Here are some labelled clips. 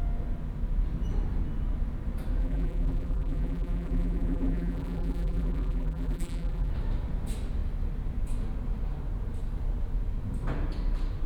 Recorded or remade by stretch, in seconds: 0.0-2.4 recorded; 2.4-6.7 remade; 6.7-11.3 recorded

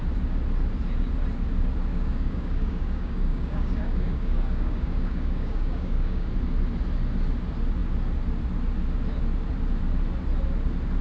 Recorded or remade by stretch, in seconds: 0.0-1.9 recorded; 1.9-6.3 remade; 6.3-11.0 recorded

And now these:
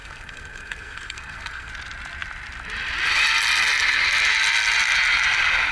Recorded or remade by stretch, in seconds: 0.0-1.7 remade; 1.7-5.7 recorded

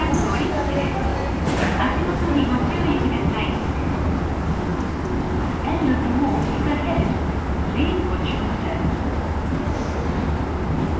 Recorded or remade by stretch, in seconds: 0.0-1.1 recorded; 1.1-1.8 remade; 1.8-8.4 recorded; 8.4-9.5 remade; 9.5-11.0 recorded